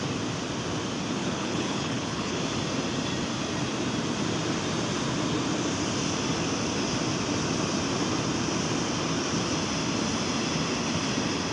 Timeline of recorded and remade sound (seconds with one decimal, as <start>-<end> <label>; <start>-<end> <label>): 0.0-1.2 recorded; 1.2-2.4 remade; 2.4-11.5 recorded